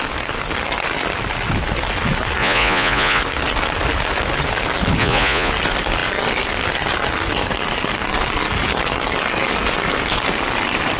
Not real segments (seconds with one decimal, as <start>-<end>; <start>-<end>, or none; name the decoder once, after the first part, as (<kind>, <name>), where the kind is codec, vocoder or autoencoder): 2.4-3.2 (vocoder, Vocos); 5.0-5.5

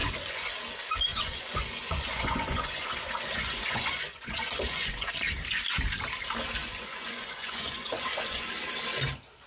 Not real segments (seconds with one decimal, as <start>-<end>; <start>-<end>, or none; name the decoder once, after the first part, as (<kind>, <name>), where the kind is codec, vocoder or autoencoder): 0.0-0.5 (vocoder, Vocos); 1.1-5.1; 6.6-8.5

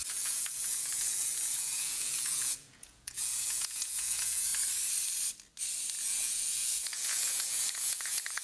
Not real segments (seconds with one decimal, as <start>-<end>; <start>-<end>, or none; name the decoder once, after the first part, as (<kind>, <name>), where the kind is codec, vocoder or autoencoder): 0.0-4.5 (vocoder, Vocos); 6.0-8.4